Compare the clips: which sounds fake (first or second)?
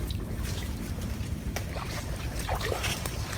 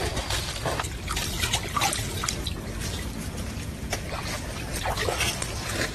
first